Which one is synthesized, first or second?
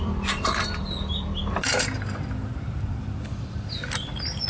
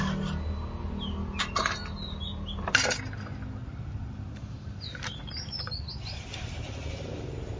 first